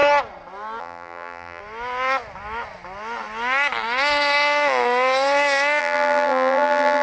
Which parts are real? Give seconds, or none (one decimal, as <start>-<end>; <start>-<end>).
0.0-0.8; 1.6-5.8